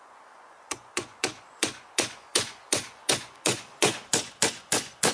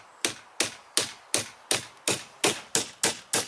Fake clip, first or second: first